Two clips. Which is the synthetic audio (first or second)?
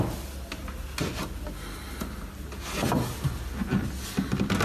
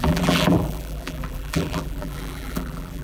second